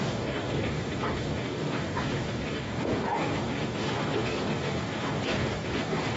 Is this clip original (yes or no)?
no